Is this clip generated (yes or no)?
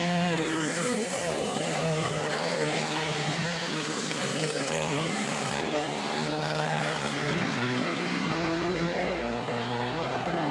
yes